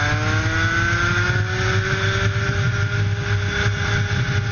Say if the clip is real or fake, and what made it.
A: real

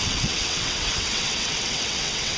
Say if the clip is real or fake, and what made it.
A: fake, vocoder, WaveNeXt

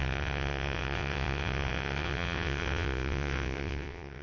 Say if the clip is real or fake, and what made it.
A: fake, vocoder, WaveNeXt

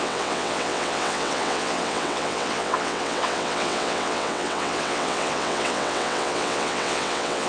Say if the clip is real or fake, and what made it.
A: fake, vocoder, WaveNeXt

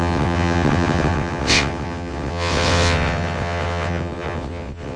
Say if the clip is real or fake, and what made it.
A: fake, vocoder, WaveNeXt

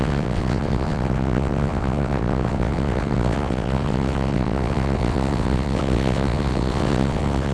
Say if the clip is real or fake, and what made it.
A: fake, vocoder, WaveNeXt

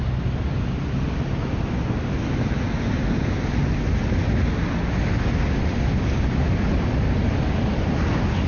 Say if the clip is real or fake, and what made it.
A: real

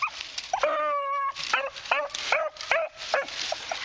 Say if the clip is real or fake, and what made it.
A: real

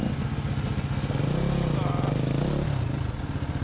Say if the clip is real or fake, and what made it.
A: real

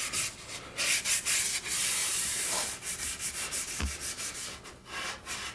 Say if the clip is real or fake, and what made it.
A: real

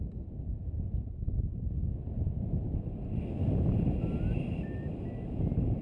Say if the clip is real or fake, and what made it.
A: real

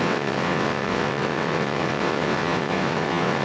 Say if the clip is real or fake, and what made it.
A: fake, vocoder, WaveNeXt